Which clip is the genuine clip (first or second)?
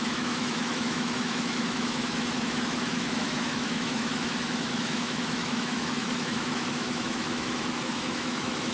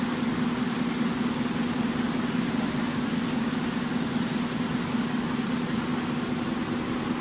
second